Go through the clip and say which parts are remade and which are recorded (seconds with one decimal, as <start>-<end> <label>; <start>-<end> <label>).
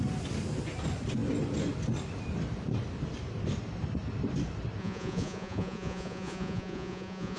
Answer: 0.0-4.8 recorded; 4.8-7.4 remade